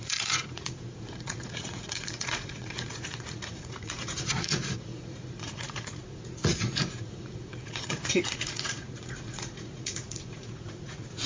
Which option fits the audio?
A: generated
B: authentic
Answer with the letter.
A